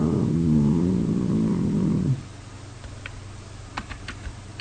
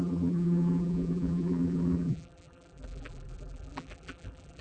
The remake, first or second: second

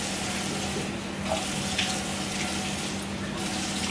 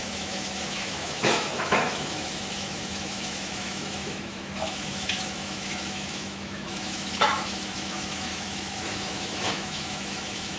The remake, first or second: second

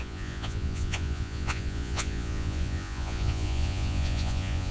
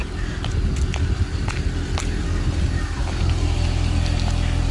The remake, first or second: first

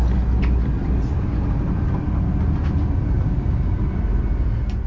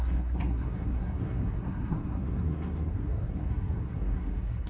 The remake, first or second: second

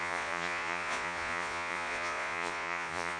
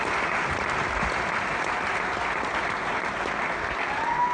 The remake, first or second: first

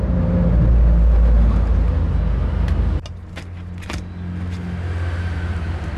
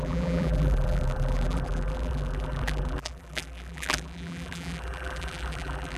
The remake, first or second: second